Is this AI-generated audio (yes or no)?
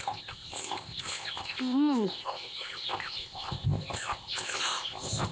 yes